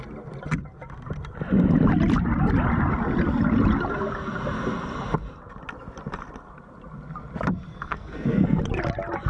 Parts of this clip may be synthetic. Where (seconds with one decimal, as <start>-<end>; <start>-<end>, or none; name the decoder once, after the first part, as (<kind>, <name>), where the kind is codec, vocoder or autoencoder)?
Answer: 7.7-8.6 (codec, SNAC)